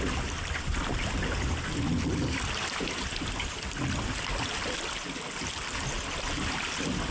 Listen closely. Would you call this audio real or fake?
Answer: real